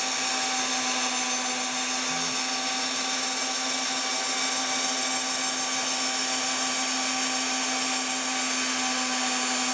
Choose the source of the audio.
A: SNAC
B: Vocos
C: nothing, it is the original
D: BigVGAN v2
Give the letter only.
C